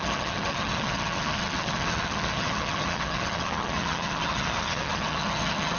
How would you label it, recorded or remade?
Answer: remade